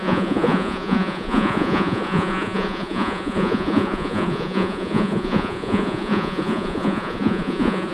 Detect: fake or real fake